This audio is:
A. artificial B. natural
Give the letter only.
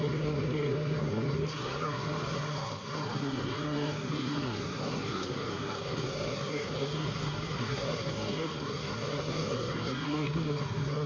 A